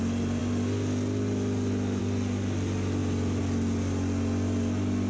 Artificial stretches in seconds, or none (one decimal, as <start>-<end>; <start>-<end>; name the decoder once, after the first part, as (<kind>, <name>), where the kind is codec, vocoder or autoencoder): none